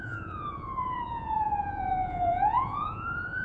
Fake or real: fake